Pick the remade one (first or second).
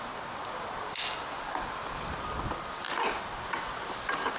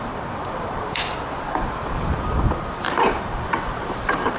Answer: second